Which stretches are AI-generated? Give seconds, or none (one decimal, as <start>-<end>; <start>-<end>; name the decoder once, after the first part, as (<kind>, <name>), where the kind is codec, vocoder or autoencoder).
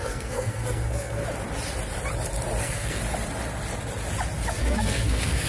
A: 0.0-1.2 (codec, SNAC); 2.6-3.0; 4.5-5.5